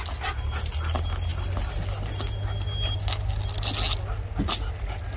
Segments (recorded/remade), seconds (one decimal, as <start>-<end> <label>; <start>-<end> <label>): 0.0-5.2 recorded

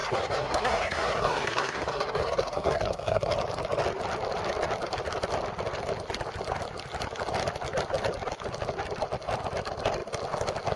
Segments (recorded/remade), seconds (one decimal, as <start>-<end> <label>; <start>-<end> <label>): 0.0-3.3 remade; 3.3-10.8 recorded

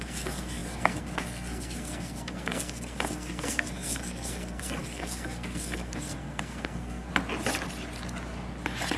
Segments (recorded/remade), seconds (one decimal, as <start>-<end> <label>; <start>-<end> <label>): 0.0-7.1 remade; 7.1-9.0 recorded

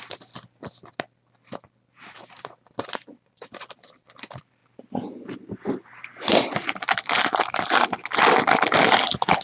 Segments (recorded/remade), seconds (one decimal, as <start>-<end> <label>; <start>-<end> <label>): 0.0-9.4 recorded